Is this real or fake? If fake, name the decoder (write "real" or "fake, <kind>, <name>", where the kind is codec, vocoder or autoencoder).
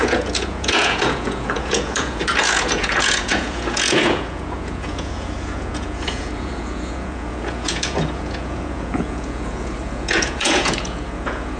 fake, vocoder, Vocos